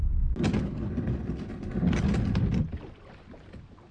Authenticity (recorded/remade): recorded